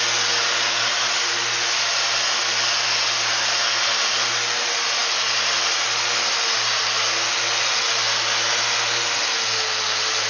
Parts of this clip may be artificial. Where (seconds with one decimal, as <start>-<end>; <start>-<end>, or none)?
none